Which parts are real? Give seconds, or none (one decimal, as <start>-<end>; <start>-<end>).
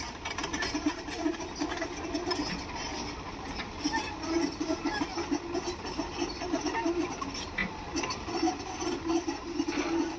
0.0-10.2